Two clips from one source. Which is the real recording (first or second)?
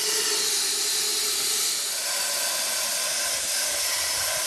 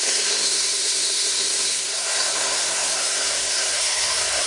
first